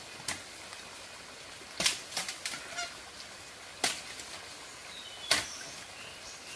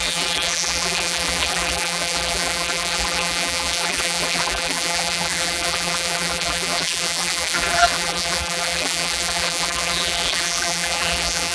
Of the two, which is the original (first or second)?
first